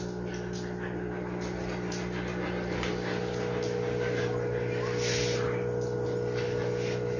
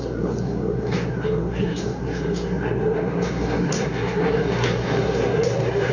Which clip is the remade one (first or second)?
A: second